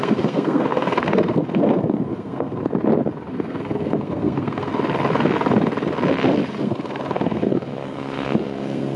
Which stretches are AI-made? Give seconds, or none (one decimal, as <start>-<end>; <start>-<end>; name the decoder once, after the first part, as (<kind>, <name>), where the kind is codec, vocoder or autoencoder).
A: 0.0-2.6 (codec, SNAC); 3.3-4.7; 6.6-9.0